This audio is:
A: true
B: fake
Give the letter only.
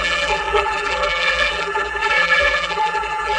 B